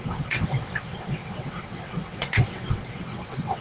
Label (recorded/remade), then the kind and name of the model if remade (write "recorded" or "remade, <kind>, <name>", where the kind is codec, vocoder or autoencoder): remade, vocoder, WaveNeXt